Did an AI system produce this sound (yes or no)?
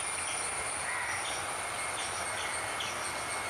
no